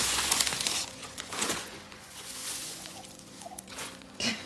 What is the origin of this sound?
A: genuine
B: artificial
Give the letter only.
B